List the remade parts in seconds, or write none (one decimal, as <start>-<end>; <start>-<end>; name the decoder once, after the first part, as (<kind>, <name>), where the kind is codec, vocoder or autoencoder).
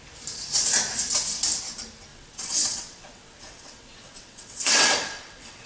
2.1-5.7 (vocoder, WaveNeXt)